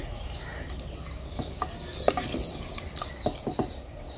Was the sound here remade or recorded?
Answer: recorded